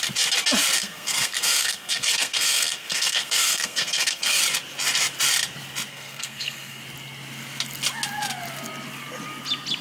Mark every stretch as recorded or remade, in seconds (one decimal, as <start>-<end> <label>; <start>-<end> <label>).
0.0-0.8 recorded; 0.8-4.4 remade; 4.4-5.9 recorded; 5.9-6.8 remade; 6.8-9.8 recorded